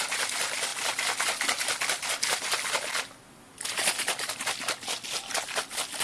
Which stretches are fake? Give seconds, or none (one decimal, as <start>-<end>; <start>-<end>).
none